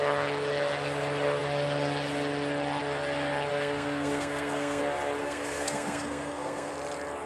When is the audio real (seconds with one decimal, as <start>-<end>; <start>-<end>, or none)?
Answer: 0.0-3.5; 4.8-5.2; 6.7-7.3